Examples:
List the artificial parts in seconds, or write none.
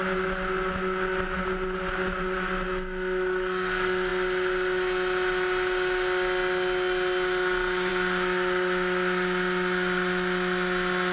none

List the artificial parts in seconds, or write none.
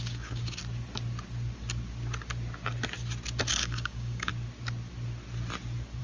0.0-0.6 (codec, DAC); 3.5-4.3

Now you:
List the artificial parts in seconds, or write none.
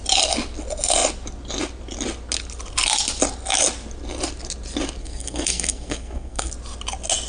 5.0-6.5 (codec, SNAC)